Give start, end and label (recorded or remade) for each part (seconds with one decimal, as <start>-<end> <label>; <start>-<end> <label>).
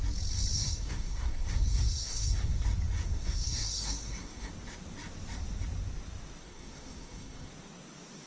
0.0-0.5 recorded; 0.5-2.6 remade; 2.6-3.0 recorded; 3.0-4.5 remade; 4.5-6.4 recorded; 6.4-7.5 remade; 7.5-8.3 recorded